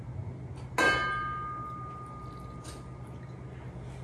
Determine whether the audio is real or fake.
real